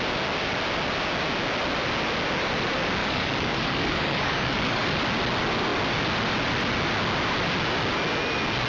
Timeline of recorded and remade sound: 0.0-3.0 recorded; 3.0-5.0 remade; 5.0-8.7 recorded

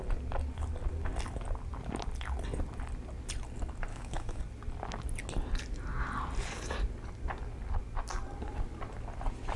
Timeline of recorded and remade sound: 0.0-3.9 recorded; 3.9-4.4 remade; 4.4-9.6 recorded

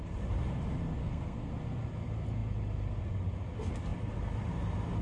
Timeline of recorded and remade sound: 0.0-1.0 recorded; 1.0-1.5 remade; 1.5-5.0 recorded

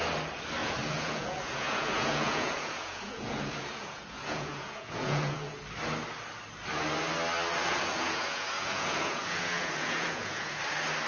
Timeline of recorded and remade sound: 0.0-0.6 recorded; 0.6-5.6 remade; 5.6-7.6 recorded; 7.6-10.6 remade; 10.6-11.1 recorded

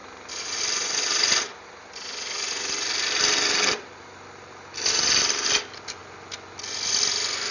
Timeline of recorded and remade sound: 0.0-7.5 recorded

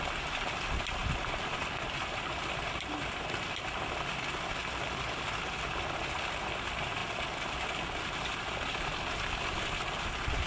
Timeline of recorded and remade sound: 0.0-10.5 recorded